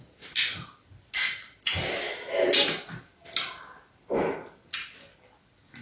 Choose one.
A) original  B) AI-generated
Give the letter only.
A